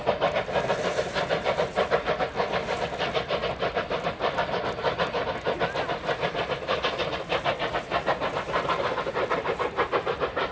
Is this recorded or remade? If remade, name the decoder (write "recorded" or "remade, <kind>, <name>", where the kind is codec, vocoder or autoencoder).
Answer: recorded